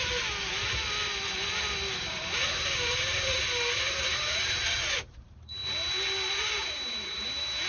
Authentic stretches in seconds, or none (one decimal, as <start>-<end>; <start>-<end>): 0.6-2.0; 5.6-6.3